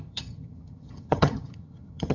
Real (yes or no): no